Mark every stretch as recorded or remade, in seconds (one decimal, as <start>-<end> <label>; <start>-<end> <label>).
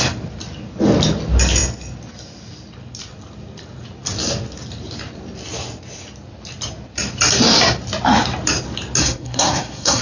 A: 0.0-9.0 recorded; 9.0-10.0 remade